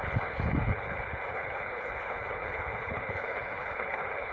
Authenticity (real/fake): fake